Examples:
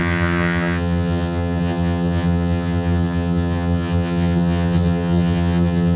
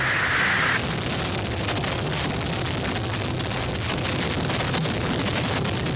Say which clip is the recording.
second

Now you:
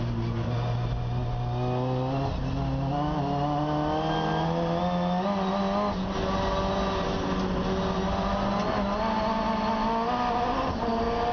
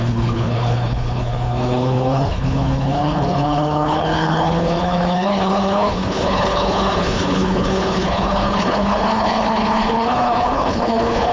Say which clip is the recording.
first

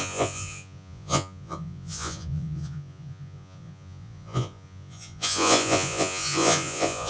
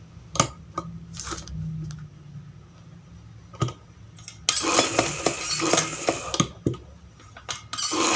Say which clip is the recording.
second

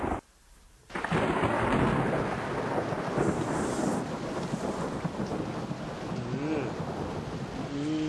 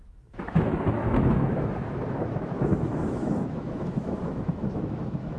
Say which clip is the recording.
first